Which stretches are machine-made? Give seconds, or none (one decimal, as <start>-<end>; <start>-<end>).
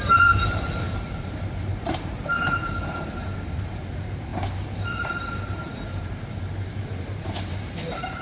0.0-8.2